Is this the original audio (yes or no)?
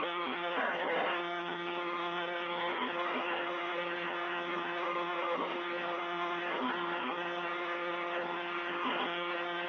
no